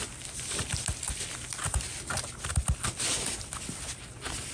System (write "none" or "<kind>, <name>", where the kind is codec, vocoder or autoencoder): none